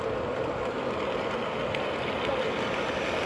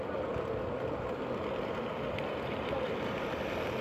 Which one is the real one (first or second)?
first